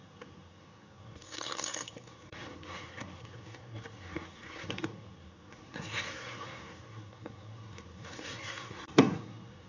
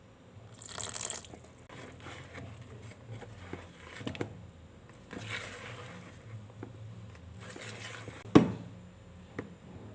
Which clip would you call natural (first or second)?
second